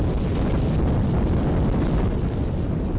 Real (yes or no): yes